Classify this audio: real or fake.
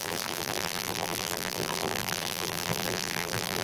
fake